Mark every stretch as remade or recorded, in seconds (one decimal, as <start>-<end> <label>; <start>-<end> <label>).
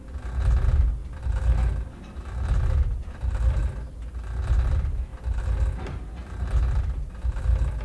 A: 0.0-7.8 recorded